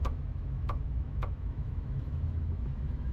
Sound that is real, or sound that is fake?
fake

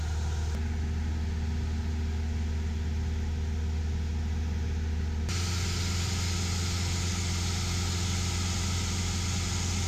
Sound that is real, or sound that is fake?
real